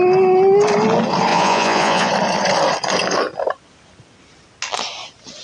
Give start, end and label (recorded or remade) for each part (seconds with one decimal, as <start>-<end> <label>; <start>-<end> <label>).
0.0-1.3 recorded; 1.3-2.1 remade; 2.1-5.4 recorded